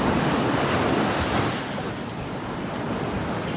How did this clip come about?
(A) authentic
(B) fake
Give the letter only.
A